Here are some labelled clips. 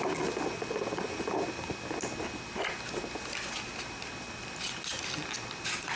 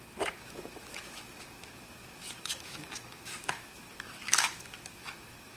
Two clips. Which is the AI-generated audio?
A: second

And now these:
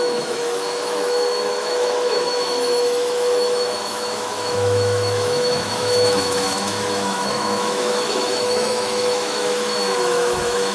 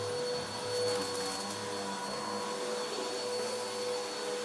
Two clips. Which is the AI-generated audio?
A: first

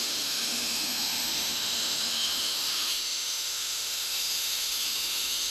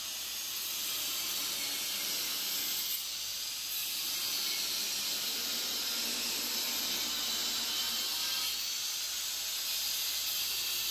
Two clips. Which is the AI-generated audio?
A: first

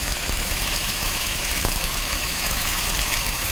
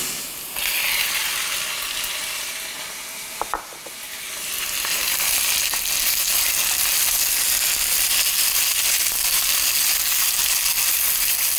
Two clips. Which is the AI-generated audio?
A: first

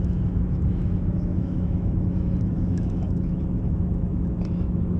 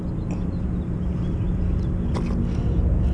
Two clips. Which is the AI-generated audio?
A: first